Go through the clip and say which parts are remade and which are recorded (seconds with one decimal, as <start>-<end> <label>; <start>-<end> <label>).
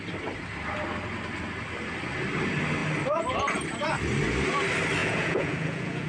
0.0-5.0 recorded; 5.0-6.1 remade